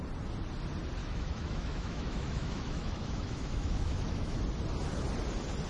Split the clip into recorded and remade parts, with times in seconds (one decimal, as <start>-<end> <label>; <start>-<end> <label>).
0.0-1.0 recorded; 1.0-4.4 remade; 4.4-5.7 recorded